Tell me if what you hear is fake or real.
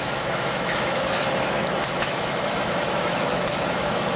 fake